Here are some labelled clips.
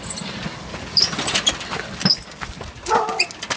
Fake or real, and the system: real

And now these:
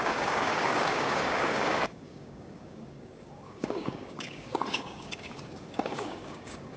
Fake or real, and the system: fake, codec, DAC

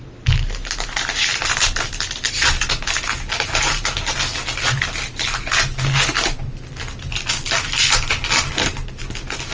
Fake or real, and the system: real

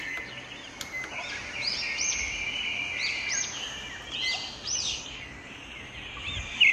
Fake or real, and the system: real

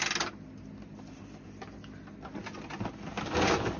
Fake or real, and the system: real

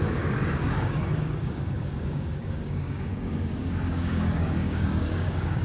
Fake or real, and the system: fake, codec, DAC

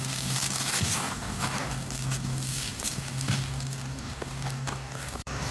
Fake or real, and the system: fake, codec, DAC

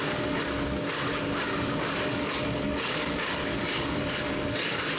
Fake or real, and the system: fake, codec, DAC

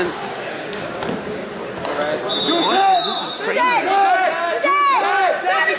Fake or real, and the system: real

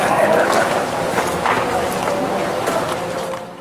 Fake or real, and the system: real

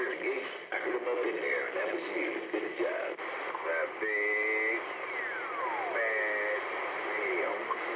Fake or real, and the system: real